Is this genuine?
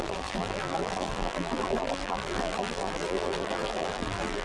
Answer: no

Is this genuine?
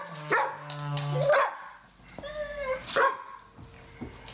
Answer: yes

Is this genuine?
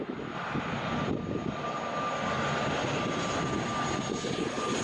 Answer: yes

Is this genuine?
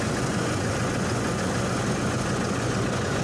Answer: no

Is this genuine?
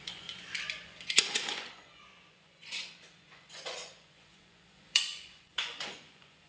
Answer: no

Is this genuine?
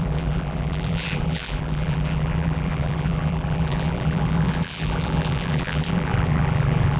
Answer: no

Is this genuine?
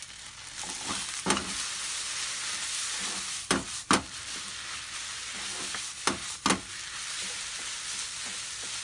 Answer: yes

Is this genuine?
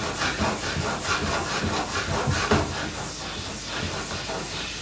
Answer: yes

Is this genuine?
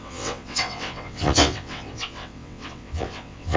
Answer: no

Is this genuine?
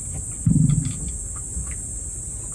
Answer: yes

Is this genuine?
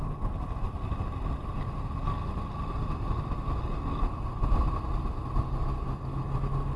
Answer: yes